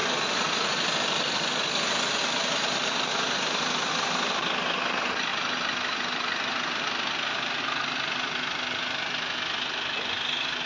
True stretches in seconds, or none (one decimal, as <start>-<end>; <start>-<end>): 0.0-10.7